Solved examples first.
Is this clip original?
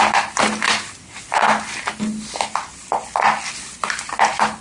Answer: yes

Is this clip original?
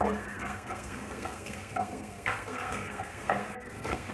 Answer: no